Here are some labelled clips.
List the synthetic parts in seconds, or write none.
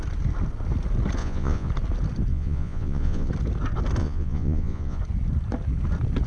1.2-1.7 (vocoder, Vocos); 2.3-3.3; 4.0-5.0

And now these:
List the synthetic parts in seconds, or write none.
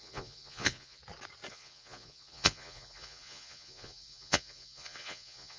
0.0-1.0 (vocoder, Vocos); 1.5-5.6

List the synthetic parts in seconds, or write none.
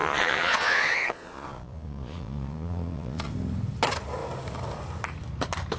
0.0-3.3 (vocoder, Vocos)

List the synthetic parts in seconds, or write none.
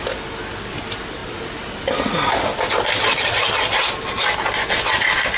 none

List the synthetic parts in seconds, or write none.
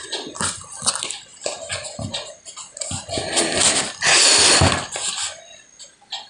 none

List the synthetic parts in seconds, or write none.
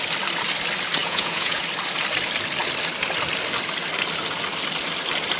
1.0-1.6 (vocoder, Vocos)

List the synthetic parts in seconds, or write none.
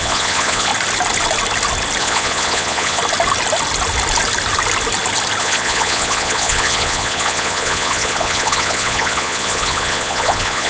0.0-0.7 (vocoder, Vocos); 2.0-3.0; 5.4-10.7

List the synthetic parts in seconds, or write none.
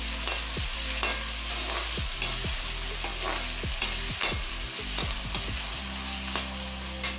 none